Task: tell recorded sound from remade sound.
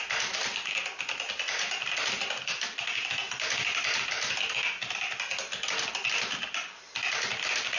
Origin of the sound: recorded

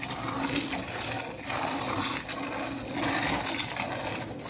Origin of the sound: recorded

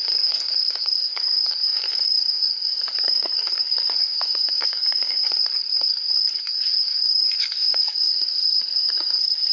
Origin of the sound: remade